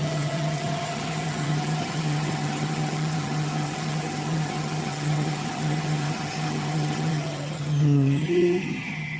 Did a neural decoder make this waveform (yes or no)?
yes